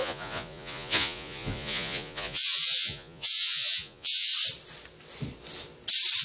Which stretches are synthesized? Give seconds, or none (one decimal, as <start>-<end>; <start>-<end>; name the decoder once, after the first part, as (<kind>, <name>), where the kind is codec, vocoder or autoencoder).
0.0-4.3 (vocoder, Vocos)

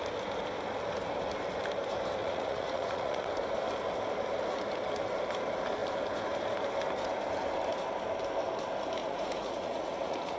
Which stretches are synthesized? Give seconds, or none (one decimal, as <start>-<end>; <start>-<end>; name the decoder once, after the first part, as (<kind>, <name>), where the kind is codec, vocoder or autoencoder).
2.2-3.3 (vocoder, Vocos); 9.0-10.4

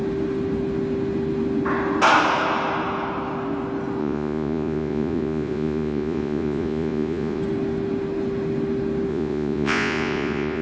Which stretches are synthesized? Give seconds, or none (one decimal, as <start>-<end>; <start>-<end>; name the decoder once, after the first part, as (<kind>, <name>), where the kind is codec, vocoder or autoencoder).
4.0-7.4 (vocoder, Vocos); 9.1-10.6

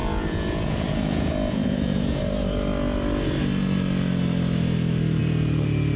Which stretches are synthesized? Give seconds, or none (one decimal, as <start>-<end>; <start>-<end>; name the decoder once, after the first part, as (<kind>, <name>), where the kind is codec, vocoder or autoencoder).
0.0-2.2 (vocoder, Vocos)